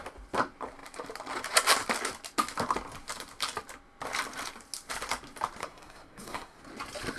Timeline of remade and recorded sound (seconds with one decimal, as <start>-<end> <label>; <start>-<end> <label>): 0.0-5.6 recorded; 5.6-6.6 remade; 6.6-7.2 recorded